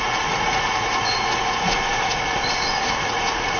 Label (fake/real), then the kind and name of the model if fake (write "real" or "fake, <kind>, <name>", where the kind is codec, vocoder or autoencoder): fake, vocoder, Vocos